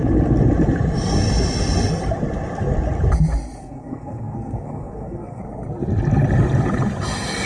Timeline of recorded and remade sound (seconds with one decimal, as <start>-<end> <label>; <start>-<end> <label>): 0.0-3.6 recorded; 3.6-5.4 remade; 5.4-7.5 recorded